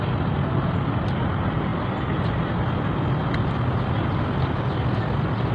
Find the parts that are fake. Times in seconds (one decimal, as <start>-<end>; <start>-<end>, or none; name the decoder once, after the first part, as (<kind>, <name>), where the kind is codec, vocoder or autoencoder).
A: none